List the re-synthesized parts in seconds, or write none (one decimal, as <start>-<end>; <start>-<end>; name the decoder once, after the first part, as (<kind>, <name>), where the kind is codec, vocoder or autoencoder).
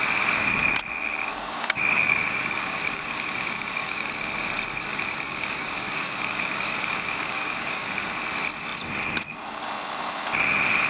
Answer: 1.3-4.3 (codec, DAC); 4.9-8.1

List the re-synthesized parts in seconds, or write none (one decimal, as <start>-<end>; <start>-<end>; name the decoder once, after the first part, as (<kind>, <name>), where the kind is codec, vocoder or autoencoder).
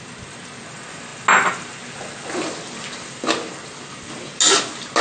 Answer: none